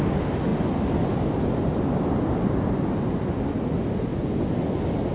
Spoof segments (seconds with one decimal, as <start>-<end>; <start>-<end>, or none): none